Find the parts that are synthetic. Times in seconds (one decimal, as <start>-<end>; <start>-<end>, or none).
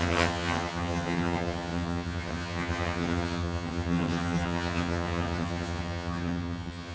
0.0-6.9